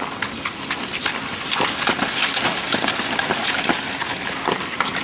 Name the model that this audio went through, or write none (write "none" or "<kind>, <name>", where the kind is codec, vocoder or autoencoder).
none